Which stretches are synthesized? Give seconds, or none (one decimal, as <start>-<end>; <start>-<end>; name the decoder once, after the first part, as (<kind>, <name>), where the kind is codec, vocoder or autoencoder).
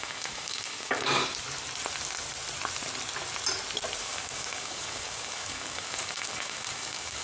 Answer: 0.0-1.2 (codec, DAC); 4.0-7.2